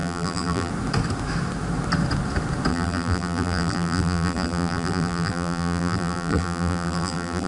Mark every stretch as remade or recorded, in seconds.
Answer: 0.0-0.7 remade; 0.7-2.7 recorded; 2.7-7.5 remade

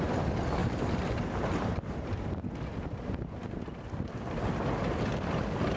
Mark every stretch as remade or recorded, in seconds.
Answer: 0.0-0.6 recorded; 0.6-2.2 remade; 2.2-5.8 recorded

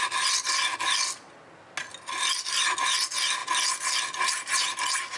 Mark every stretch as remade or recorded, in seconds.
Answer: 0.0-5.2 recorded

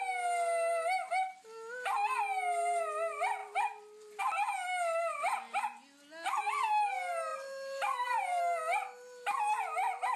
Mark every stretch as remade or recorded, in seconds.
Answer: 0.0-3.4 recorded; 3.4-4.2 remade; 4.2-7.3 recorded; 7.3-8.4 remade; 8.4-10.2 recorded

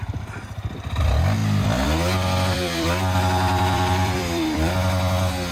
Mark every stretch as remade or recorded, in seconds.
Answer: 0.0-1.4 recorded; 1.4-4.7 remade; 4.7-5.5 recorded